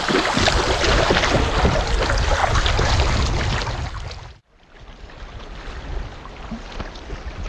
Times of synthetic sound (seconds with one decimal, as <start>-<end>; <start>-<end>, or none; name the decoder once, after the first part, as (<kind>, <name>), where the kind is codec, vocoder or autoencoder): none